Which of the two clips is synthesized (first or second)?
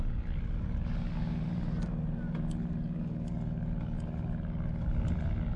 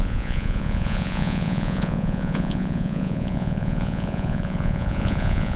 second